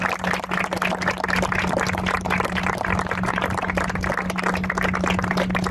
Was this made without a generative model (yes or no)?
yes